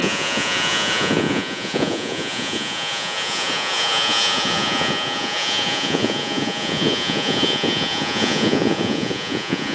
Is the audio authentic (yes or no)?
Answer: no